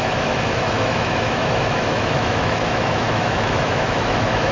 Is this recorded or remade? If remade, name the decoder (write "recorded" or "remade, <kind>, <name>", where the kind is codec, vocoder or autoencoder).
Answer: remade, autoencoder, DAC-VAE